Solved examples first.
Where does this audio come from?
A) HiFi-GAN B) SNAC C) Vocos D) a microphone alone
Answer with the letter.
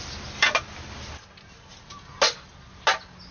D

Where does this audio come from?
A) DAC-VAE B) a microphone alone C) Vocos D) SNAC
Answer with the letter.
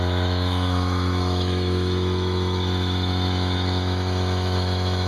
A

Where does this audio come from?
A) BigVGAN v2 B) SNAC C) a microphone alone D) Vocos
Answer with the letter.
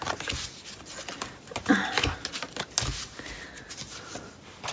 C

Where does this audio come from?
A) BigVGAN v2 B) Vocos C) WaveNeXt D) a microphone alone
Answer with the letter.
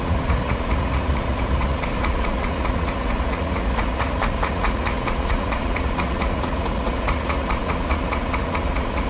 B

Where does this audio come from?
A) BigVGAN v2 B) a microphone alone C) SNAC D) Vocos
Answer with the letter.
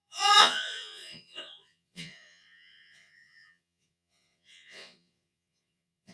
D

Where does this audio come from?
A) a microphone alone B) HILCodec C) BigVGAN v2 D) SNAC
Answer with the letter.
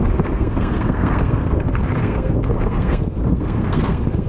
D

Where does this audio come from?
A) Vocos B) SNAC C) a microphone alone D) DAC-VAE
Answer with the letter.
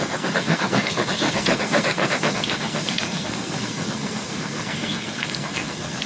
B